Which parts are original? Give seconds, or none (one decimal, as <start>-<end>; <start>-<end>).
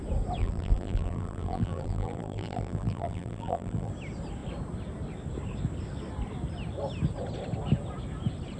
0.0-0.4; 3.9-8.6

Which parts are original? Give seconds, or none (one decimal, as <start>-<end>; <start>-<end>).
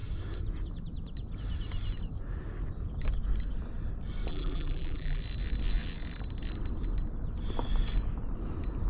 0.0-4.3; 5.2-8.9